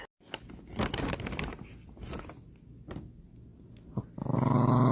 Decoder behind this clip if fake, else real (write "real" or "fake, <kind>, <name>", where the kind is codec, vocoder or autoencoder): real